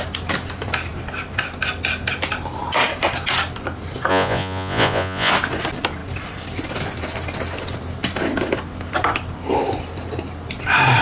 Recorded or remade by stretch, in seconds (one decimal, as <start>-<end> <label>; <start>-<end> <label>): 0.0-4.1 recorded; 4.1-5.3 remade; 5.3-11.0 recorded